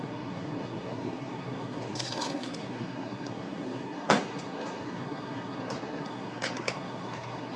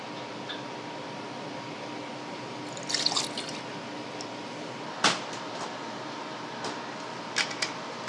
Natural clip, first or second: second